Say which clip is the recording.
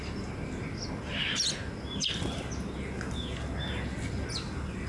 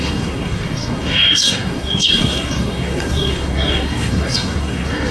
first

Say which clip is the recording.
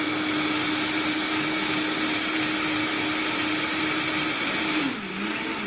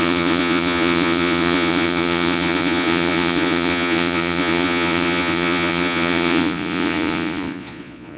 first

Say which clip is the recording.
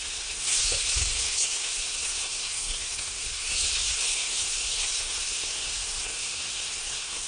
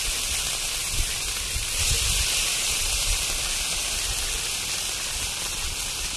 second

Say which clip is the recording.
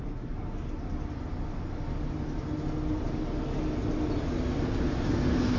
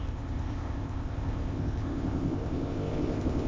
first